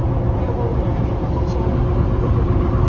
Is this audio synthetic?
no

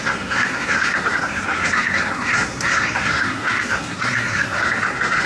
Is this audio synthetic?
yes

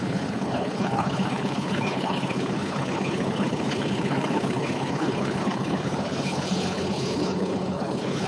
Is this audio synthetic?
yes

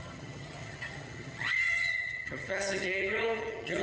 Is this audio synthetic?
yes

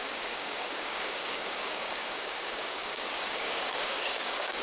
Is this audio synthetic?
yes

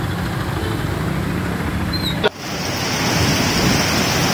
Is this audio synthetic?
no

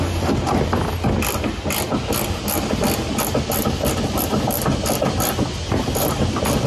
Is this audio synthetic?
no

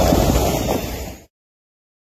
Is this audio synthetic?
no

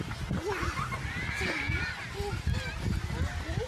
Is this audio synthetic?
no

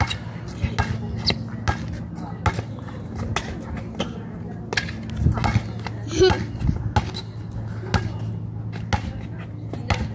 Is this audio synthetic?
no